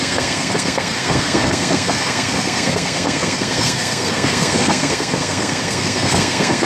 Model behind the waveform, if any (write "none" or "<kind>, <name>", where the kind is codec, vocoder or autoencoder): codec, SNAC